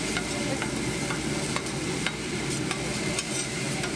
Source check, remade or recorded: recorded